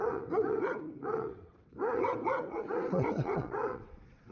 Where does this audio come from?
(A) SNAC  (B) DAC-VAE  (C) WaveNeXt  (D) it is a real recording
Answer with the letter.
C